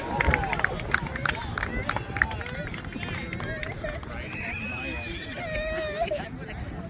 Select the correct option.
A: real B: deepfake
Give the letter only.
A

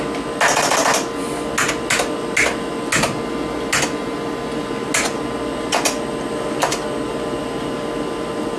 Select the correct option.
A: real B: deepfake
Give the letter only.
A